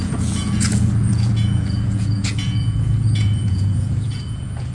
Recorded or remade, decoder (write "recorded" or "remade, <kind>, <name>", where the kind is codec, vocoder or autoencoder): remade, vocoder, Vocos